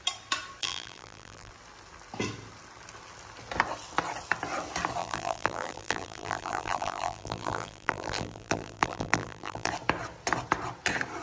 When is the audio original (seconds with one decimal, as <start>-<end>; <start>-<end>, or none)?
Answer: 0.0-0.6; 1.5-5.0; 9.7-11.2

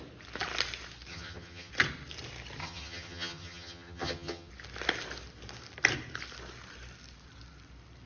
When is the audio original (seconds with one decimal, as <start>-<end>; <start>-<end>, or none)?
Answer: 0.0-1.1; 1.7-2.6; 4.5-8.1

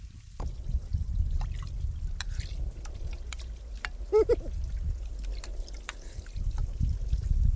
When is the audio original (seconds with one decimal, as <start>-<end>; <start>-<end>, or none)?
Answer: 0.0-7.6

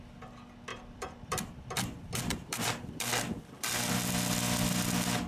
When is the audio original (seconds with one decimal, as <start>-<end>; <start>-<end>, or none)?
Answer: 0.0-0.7; 3.9-5.3

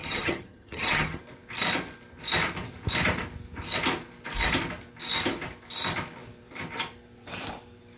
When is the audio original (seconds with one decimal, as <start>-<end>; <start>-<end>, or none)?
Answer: 1.2-8.0

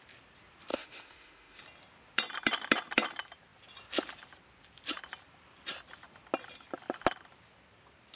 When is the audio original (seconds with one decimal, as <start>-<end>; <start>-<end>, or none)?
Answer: 0.0-0.7; 1.6-8.2

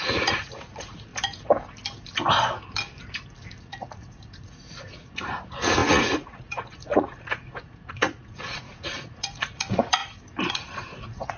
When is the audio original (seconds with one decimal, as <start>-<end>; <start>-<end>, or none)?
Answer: 1.1-3.6; 10.0-10.5